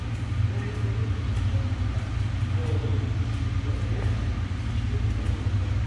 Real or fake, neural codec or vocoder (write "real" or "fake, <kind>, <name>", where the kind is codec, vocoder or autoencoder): real